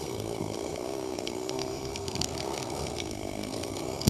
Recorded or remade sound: remade